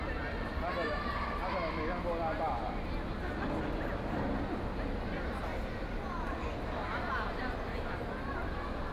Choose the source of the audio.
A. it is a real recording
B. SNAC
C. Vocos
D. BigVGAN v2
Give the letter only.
A